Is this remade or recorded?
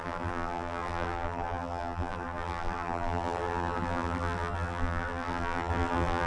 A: remade